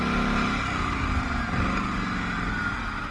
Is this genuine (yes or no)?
yes